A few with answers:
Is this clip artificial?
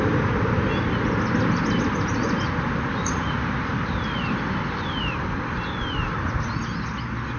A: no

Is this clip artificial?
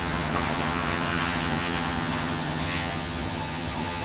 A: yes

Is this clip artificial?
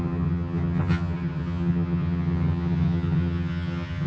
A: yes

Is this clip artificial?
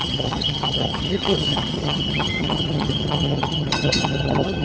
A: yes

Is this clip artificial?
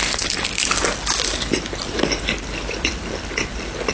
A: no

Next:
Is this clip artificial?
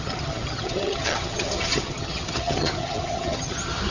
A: yes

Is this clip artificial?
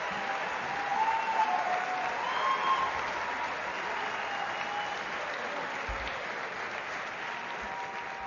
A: no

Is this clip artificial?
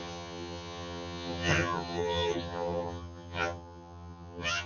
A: yes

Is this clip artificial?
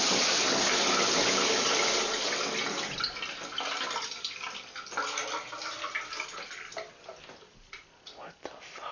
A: no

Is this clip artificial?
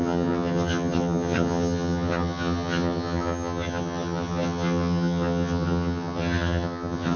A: yes